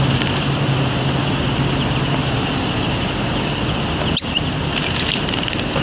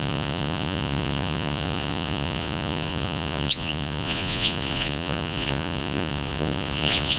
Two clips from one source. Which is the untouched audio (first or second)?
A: first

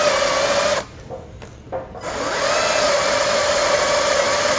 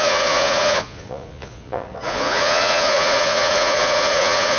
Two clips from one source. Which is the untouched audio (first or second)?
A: first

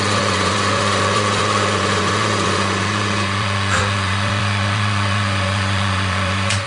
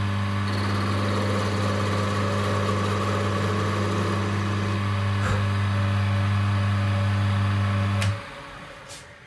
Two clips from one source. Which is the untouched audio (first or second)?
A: second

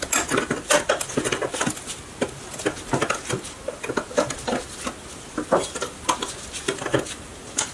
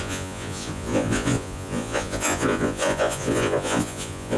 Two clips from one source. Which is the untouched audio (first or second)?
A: first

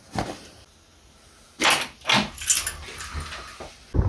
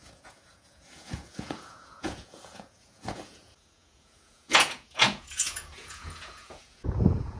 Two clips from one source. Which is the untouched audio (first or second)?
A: first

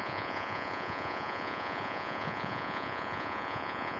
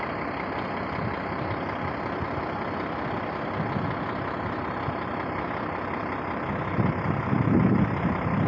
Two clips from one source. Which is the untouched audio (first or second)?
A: second